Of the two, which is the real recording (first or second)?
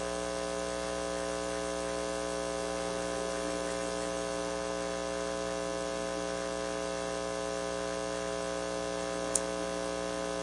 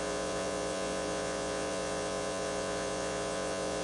first